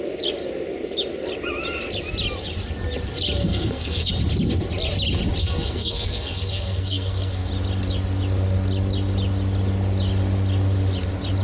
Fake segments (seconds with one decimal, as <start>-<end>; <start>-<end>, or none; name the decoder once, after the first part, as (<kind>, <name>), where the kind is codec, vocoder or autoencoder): 3.4-4.1 (codec, SNAC); 5.4-7.5